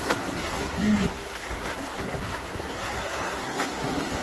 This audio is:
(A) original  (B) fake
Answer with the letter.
B